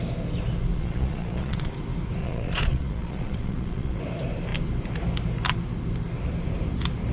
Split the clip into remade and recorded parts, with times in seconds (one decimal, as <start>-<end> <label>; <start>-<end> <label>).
0.0-0.7 recorded; 0.7-1.7 remade; 1.7-2.2 recorded; 2.2-4.0 remade; 4.0-7.1 recorded